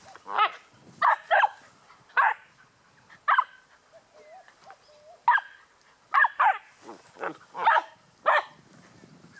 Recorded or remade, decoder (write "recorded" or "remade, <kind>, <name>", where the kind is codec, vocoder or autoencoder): recorded